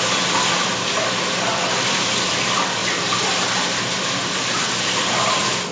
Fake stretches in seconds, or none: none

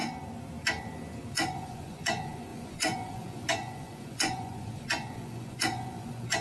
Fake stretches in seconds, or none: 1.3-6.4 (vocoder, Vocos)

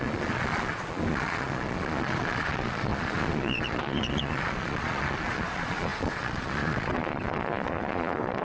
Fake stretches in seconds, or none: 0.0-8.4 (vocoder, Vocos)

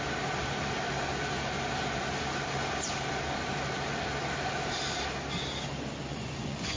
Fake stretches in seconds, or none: 6.1-6.8 (vocoder, Vocos)

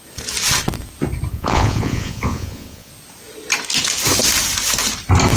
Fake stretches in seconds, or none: 1.3-2.9 (vocoder, Vocos)

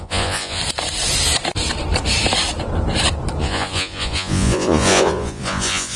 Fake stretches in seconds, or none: 0.0-0.6 (vocoder, Vocos); 3.4-6.0